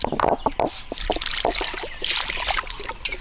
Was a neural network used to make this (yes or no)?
no